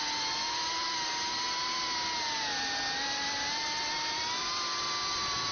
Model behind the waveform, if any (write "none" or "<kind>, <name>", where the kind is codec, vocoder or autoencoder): none